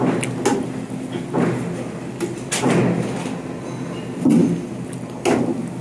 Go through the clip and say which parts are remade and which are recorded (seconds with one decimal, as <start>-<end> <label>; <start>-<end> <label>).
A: 0.0-5.8 recorded